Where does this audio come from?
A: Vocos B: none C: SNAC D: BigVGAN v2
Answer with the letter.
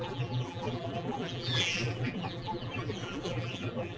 D